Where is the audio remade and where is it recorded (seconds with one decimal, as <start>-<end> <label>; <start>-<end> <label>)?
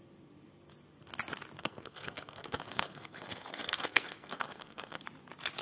0.0-1.6 recorded; 1.6-5.0 remade; 5.0-5.6 recorded